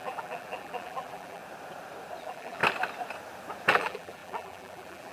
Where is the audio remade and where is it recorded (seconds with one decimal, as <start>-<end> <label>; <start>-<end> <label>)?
0.0-1.4 remade; 1.4-2.2 recorded; 2.2-2.6 remade; 2.6-3.7 recorded; 3.7-5.1 remade